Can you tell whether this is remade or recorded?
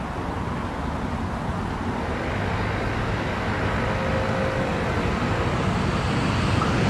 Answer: recorded